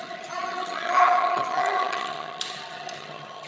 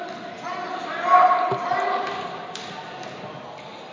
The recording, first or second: second